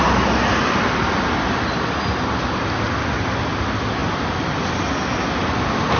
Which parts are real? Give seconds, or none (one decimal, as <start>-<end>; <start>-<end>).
0.0-6.0